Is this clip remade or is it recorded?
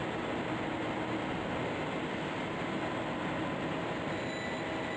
recorded